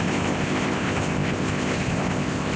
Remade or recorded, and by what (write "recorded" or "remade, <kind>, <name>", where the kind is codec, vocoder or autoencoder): remade, codec, ZipCodec